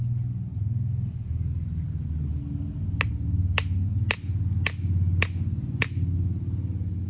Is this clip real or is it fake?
real